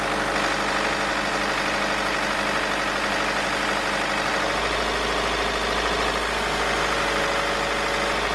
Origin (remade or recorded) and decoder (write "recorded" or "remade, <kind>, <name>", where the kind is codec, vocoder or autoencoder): recorded